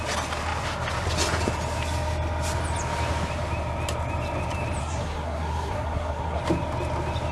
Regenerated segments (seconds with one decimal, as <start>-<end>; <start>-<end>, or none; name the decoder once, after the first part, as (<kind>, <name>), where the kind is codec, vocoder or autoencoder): 4.8-6.4 (codec, SNAC)